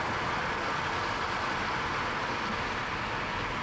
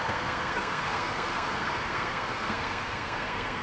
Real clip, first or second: first